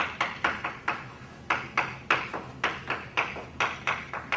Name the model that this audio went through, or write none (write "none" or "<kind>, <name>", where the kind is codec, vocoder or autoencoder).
none